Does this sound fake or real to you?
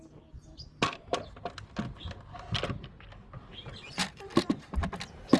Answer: real